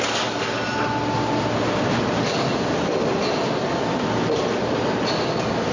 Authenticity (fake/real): real